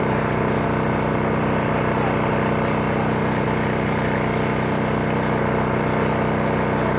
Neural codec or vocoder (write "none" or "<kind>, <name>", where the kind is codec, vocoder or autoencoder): none